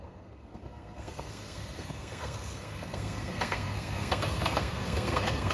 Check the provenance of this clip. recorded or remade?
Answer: remade